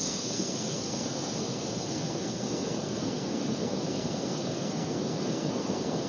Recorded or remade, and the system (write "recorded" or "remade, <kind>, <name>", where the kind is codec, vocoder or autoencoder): remade, codec, SNAC